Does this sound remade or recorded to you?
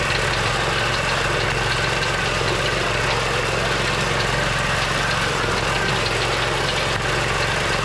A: recorded